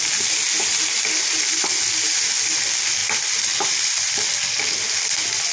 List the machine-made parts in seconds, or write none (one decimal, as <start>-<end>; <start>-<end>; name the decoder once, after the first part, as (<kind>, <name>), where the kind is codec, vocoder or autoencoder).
3.0-3.7 (vocoder, BigVGAN v2)